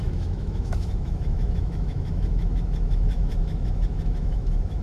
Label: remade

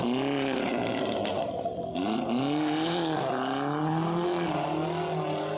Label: recorded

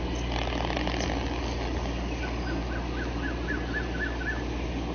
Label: recorded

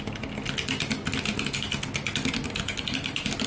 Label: recorded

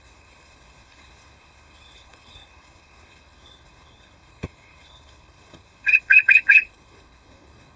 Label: remade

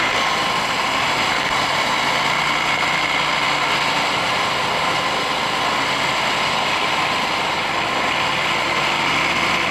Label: recorded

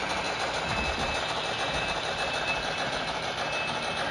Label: recorded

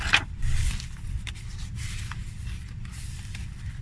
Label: remade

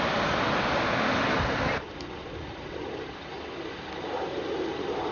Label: recorded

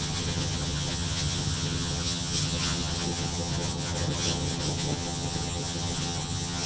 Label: remade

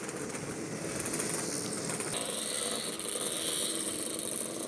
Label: recorded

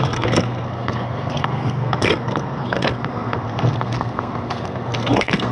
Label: remade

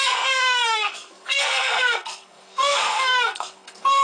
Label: remade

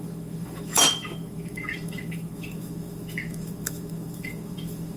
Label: remade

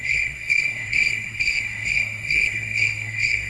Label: remade